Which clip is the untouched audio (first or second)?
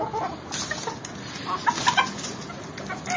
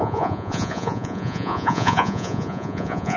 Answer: first